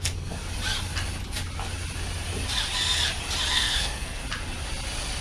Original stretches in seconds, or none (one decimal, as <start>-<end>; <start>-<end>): 0.4-3.5; 4.2-5.2

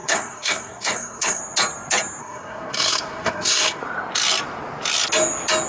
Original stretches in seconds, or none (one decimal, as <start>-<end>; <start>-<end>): 1.4-2.2; 3.8-5.7

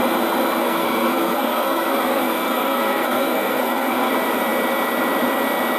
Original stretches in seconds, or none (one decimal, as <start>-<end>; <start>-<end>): 0.0-0.6; 4.1-5.8

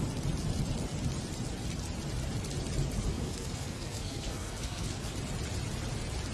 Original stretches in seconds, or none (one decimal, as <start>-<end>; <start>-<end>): 0.0-3.1; 5.1-6.3

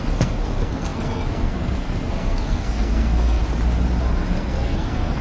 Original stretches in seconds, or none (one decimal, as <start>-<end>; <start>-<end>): 3.4-4.3

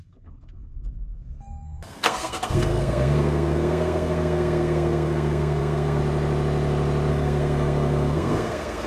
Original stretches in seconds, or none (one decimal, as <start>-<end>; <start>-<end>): 6.0-7.1